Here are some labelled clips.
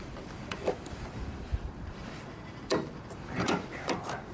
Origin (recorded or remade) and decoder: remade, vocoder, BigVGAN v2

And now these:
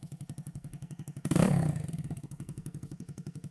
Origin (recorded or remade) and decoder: remade, codec, SNAC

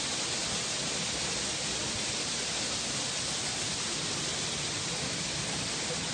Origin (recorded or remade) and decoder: recorded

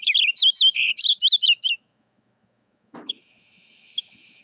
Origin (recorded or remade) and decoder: remade, autoencoder, DAC-VAE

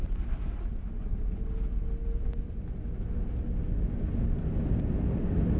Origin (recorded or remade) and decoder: recorded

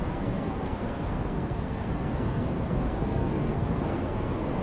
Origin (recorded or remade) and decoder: remade, codec, SNAC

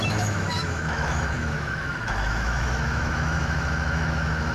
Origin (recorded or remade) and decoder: remade, autoencoder, DAC-VAE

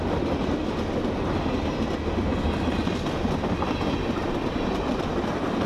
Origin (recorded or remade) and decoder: recorded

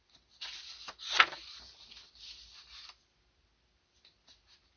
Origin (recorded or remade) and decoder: recorded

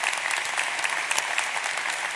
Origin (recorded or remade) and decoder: recorded